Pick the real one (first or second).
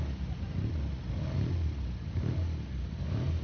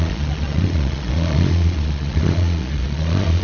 first